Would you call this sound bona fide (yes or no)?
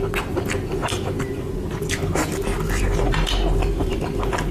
yes